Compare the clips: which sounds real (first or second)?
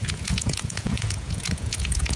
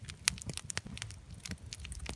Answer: second